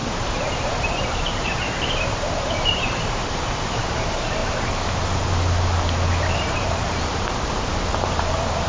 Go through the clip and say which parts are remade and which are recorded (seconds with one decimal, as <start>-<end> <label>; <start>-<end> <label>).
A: 0.0-4.4 remade; 4.4-6.3 recorded; 6.3-8.7 remade